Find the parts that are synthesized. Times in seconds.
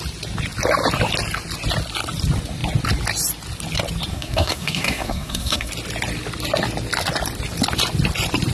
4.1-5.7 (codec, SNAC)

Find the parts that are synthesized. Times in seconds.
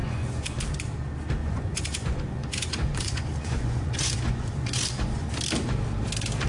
0.0-0.6 (vocoder, Vocos); 1.4-5.3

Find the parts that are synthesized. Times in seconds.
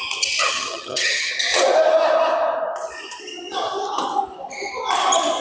0.4-1.3 (vocoder, HiFi-GAN)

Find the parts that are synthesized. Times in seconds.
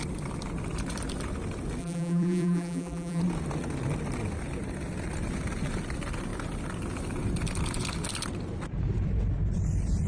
1.8-3.2 (vocoder, BigVGAN v2)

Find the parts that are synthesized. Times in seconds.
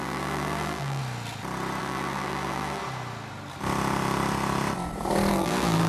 0.0-1.0 (vocoder, BigVGAN v2); 1.8-2.8; 5.3-5.9